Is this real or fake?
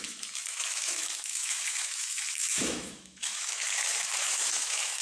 fake